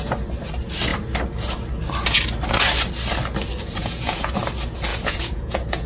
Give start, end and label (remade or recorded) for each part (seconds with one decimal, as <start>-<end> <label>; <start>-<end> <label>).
0.0-3.8 recorded; 3.8-4.3 remade; 4.3-4.9 recorded; 4.9-5.9 remade

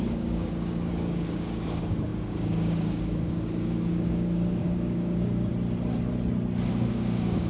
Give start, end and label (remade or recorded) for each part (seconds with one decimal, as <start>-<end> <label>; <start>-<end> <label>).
0.0-5.5 remade; 5.5-6.7 recorded; 6.7-7.5 remade

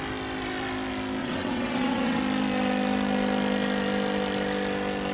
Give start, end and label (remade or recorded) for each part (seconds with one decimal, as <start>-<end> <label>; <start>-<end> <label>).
0.0-1.2 recorded; 1.2-2.2 remade; 2.2-5.1 recorded

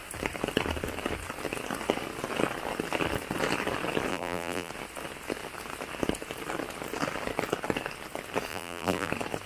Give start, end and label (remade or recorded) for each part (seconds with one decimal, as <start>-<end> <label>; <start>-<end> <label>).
0.0-4.1 recorded; 4.1-4.7 remade; 4.7-8.5 recorded; 8.5-9.1 remade; 9.1-9.5 recorded

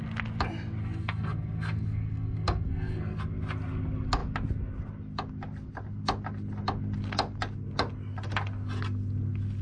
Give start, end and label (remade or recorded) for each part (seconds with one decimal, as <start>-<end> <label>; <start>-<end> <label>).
0.0-0.8 recorded; 0.8-3.2 remade; 3.2-9.6 recorded

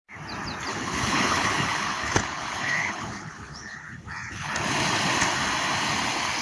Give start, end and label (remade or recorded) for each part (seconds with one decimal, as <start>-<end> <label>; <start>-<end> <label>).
0.0-0.7 recorded; 0.7-4.5 remade; 4.5-6.4 recorded

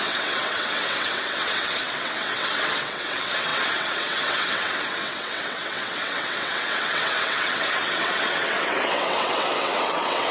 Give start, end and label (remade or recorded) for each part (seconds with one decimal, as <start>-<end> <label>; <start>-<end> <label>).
0.0-10.3 remade

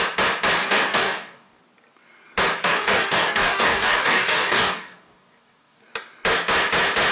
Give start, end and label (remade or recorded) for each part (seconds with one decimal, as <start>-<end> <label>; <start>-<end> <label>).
0.0-0.6 recorded; 0.6-1.6 remade; 1.6-2.6 recorded; 2.6-5.8 remade; 5.8-7.1 recorded